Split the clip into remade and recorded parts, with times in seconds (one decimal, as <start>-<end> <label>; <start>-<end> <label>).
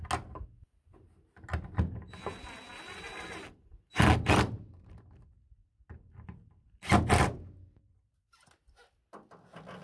0.0-9.8 recorded